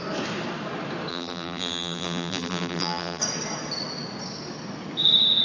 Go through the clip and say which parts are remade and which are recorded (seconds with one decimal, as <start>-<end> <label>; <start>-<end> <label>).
0.0-1.1 recorded; 1.1-3.2 remade; 3.2-5.4 recorded